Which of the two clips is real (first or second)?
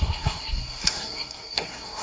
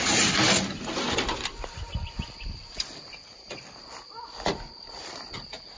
second